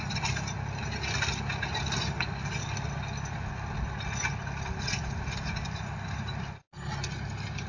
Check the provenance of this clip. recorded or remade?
recorded